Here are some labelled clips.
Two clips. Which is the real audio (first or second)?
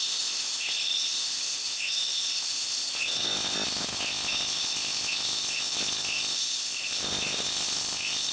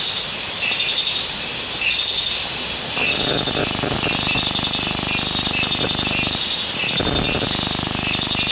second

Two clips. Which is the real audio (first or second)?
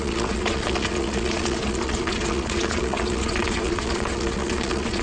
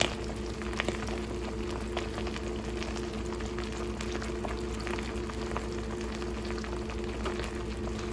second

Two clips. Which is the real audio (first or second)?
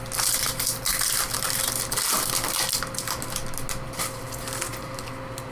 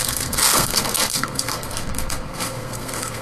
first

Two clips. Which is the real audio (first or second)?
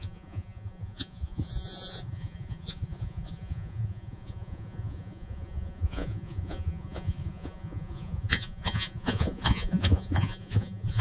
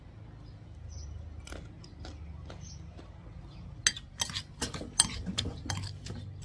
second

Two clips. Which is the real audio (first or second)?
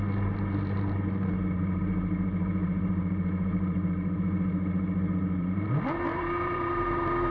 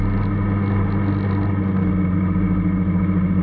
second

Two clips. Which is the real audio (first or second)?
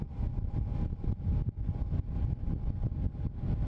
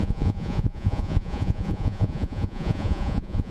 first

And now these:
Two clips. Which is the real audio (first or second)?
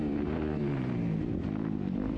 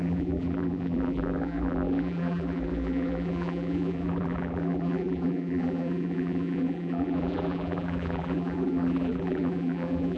first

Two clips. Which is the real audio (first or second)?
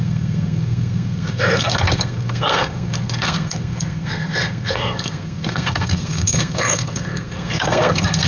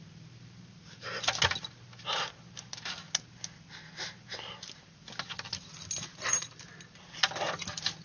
second